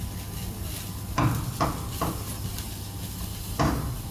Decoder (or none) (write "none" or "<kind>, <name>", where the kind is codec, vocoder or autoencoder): none